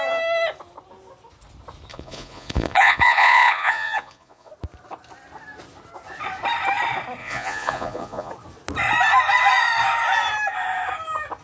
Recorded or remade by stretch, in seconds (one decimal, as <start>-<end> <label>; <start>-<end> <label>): 0.0-1.9 recorded; 1.9-4.5 remade; 4.5-7.2 recorded; 7.2-8.3 remade; 8.3-11.4 recorded